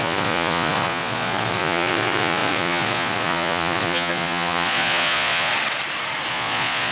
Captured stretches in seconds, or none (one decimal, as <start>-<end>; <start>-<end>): 5.5-6.3